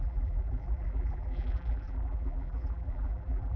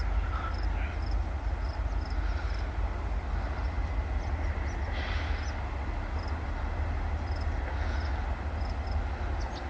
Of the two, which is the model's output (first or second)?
first